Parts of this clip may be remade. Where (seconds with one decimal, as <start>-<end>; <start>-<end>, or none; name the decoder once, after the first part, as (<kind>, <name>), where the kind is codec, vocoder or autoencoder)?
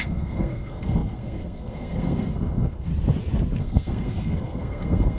0.0-2.9 (codec, SNAC); 3.6-5.2